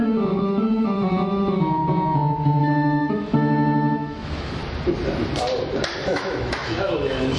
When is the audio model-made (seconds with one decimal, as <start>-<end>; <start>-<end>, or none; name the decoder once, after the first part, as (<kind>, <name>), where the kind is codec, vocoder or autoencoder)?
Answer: 0.0-1.8 (autoencoder, DAC-VAE); 2.6-4.6; 6.0-7.4